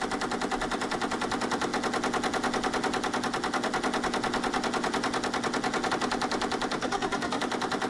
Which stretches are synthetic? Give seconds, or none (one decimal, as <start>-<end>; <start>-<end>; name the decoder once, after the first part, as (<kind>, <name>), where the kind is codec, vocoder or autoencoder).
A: 6.8-7.4 (codec, SNAC)